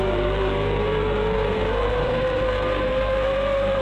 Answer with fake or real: fake